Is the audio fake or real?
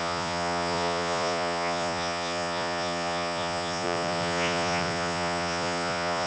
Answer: fake